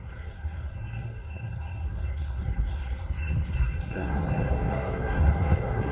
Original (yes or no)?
no